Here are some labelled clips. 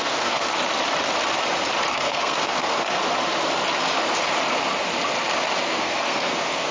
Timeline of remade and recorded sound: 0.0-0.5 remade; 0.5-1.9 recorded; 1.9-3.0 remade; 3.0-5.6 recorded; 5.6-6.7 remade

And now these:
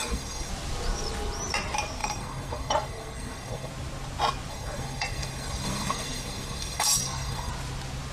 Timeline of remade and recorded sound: 0.0-0.5 remade; 0.5-2.0 recorded; 2.0-3.7 remade; 3.7-4.5 recorded; 4.5-7.5 remade; 7.5-8.1 recorded